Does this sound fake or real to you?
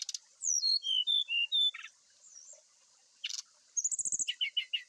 real